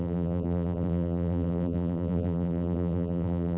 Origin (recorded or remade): remade